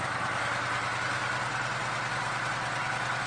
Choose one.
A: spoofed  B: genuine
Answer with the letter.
B